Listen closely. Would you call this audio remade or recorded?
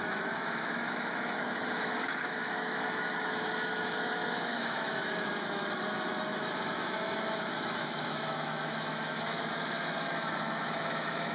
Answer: remade